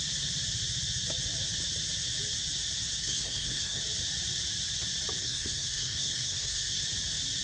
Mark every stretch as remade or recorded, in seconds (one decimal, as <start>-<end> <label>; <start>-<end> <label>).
0.0-3.0 recorded; 3.0-3.8 remade; 3.8-5.2 recorded; 5.2-6.8 remade; 6.8-7.4 recorded